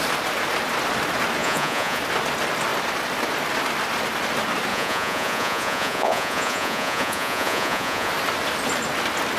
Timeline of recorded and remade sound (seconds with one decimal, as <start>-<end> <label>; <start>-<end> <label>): 0.0-1.4 recorded; 1.4-2.0 remade; 2.0-4.7 recorded; 4.7-8.1 remade; 8.1-9.4 recorded